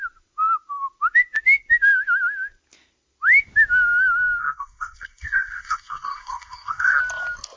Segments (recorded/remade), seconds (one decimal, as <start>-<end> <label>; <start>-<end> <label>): 0.0-4.4 recorded; 4.4-7.0 remade; 7.0-7.6 recorded